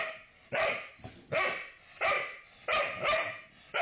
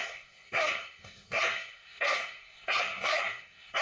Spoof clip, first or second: second